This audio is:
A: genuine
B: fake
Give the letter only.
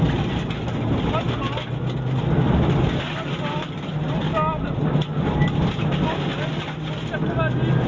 A